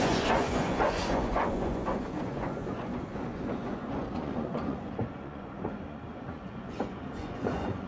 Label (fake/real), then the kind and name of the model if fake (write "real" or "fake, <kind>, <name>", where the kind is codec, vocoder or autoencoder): fake, vocoder, Vocos